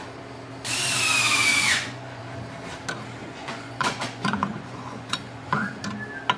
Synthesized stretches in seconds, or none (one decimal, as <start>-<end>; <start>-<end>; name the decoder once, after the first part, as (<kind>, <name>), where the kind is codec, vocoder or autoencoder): 1.5-2.2 (vocoder, Vocos); 3.2-5.8